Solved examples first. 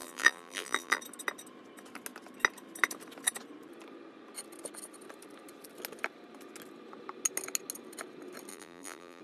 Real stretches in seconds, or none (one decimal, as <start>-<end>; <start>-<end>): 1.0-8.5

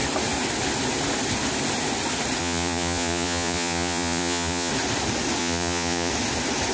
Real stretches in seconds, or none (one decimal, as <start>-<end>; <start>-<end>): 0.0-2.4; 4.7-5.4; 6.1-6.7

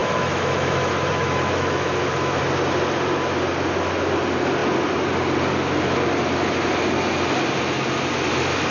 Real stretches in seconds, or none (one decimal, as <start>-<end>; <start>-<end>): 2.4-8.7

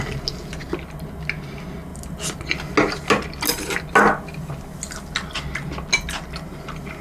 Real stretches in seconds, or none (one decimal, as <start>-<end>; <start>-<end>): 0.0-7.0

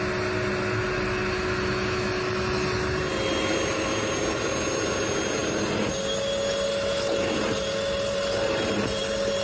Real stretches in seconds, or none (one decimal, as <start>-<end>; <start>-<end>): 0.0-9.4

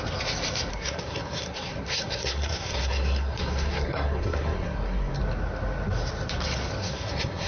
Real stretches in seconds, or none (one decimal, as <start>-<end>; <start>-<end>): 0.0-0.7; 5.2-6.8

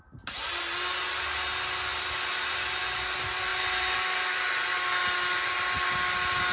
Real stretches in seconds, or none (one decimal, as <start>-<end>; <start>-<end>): 0.0-6.5